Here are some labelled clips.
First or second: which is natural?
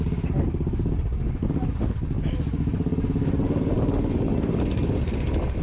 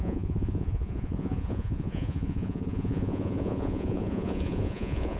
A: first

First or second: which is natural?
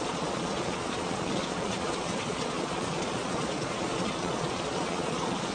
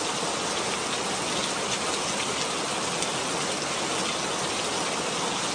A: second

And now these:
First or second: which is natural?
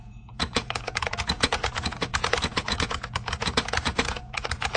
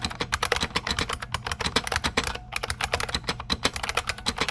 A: second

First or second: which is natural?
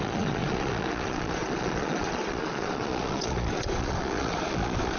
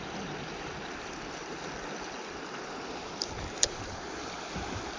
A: second